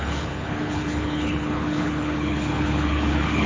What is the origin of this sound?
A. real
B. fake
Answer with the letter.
B